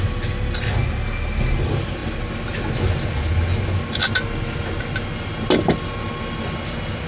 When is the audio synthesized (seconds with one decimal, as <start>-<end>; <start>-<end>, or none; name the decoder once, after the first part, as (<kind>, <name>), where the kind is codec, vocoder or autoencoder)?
none